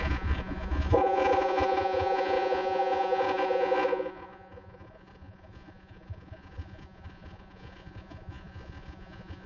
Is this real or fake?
fake